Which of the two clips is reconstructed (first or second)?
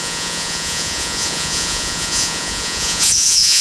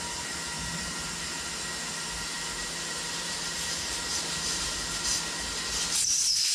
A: first